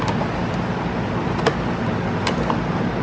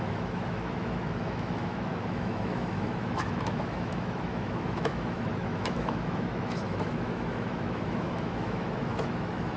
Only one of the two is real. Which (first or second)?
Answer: first